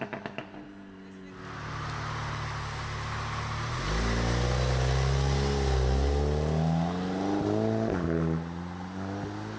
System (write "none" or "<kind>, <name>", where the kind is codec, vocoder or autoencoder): none